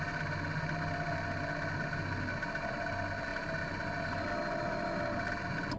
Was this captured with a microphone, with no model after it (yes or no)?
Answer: yes